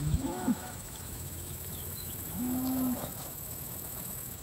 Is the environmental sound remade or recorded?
remade